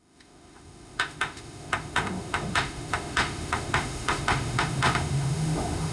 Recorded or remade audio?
remade